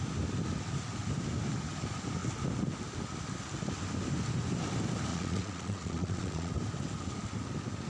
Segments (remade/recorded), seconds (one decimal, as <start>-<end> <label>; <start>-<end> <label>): 0.0-5.1 recorded; 5.1-6.5 remade; 6.5-7.9 recorded